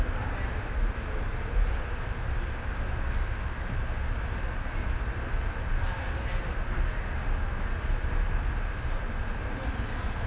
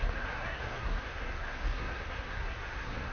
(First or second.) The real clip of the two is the first